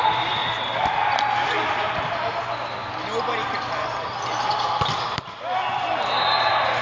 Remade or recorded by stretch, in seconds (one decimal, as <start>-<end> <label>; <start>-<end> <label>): 0.0-6.8 recorded